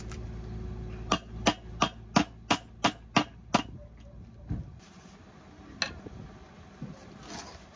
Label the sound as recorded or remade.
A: recorded